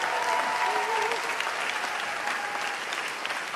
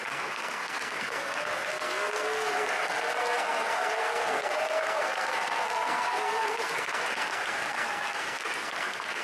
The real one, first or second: first